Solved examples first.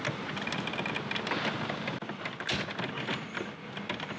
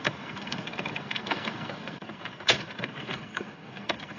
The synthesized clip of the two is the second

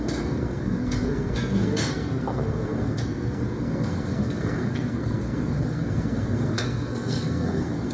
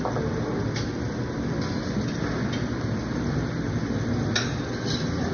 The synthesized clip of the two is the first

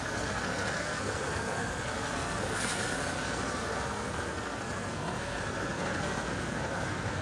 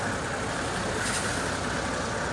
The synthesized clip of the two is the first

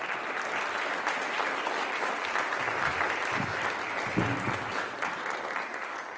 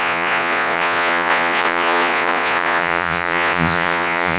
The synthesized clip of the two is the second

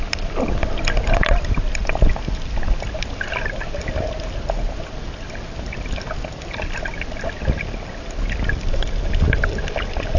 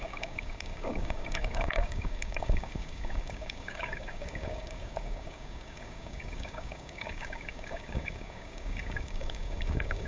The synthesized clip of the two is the second